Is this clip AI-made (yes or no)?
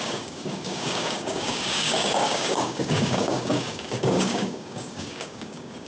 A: yes